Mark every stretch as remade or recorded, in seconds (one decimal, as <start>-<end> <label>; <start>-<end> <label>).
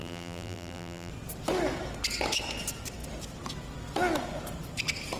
0.0-1.1 remade; 1.1-5.2 recorded